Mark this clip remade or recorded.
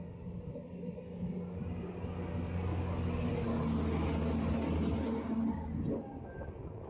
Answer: recorded